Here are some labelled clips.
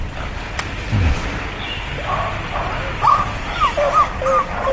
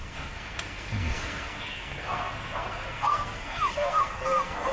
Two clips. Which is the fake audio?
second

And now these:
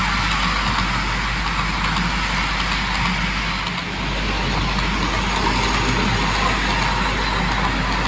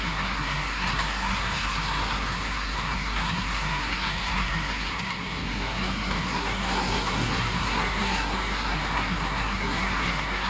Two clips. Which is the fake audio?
second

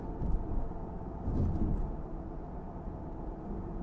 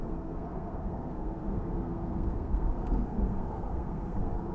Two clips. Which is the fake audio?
second